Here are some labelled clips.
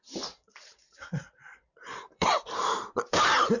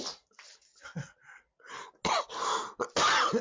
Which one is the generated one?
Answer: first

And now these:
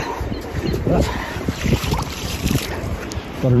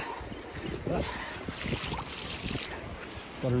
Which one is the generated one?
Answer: first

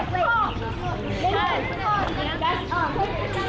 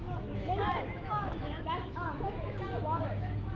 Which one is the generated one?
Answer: second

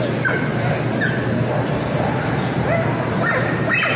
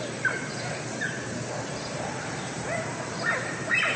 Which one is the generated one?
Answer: second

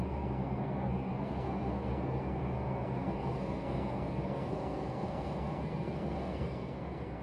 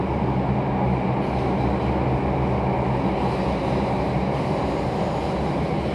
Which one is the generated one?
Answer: first